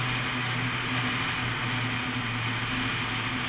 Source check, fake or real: real